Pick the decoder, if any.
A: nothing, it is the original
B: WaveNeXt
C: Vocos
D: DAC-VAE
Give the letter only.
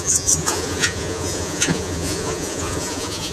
C